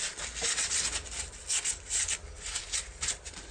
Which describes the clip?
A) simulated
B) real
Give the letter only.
B